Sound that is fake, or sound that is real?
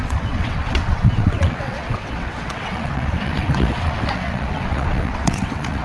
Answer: fake